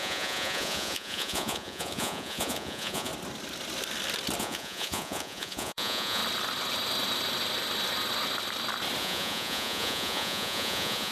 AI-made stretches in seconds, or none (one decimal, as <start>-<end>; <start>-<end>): 0.0-3.1; 4.4-6.2; 9.0-11.1